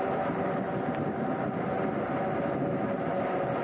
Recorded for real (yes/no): yes